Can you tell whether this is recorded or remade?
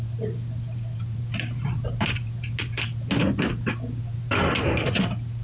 recorded